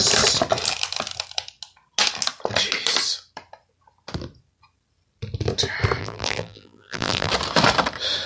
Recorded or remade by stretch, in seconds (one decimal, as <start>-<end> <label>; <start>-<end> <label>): 0.0-6.0 recorded; 6.0-7.3 remade; 7.3-8.3 recorded